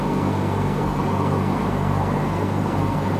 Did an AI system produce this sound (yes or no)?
yes